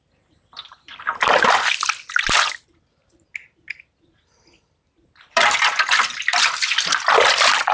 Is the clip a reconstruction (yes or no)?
no